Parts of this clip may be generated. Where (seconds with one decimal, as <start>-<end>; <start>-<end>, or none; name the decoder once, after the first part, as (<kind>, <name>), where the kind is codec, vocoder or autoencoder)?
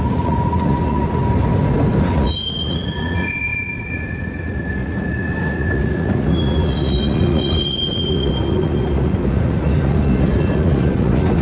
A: 0.0-1.2 (vocoder, Vocos); 2.0-11.4